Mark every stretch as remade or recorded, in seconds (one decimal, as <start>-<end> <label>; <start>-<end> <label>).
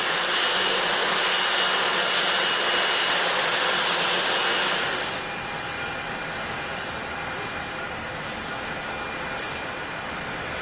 0.0-10.6 recorded